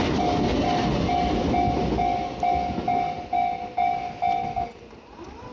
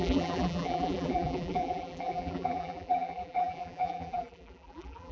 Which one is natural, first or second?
first